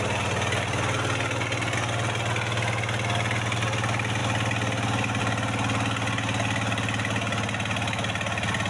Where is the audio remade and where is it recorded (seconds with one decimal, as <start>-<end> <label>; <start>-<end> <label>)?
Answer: 0.0-8.7 recorded